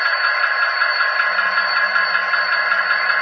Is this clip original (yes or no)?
no